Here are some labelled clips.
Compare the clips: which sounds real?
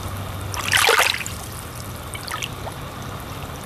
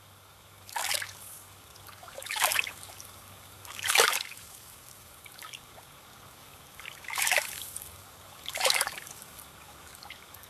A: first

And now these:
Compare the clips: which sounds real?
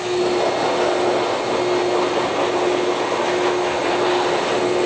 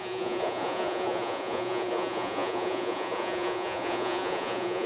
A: first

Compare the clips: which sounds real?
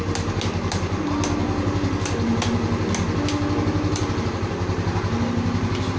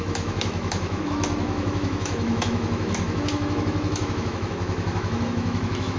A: first